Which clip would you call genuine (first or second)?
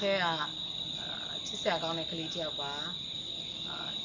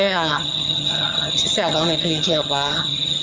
first